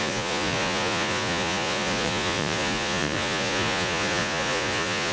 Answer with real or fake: fake